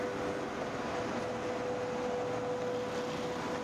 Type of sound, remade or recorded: recorded